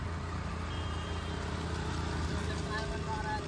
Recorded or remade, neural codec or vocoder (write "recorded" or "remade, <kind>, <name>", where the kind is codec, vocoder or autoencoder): recorded